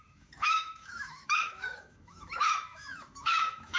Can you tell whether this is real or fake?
fake